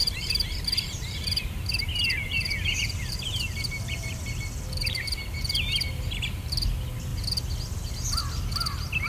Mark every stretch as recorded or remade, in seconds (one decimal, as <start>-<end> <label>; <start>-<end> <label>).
0.0-4.2 remade; 4.2-4.8 recorded; 4.8-6.1 remade; 6.1-9.1 recorded